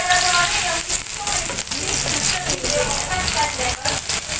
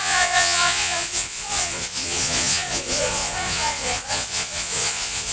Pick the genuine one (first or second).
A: first